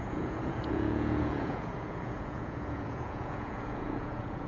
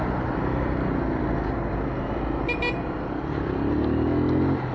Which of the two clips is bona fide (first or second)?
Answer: second